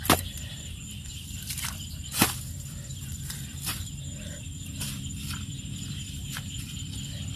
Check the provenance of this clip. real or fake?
fake